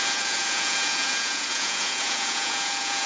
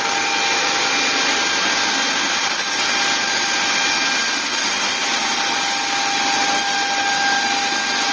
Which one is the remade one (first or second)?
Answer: first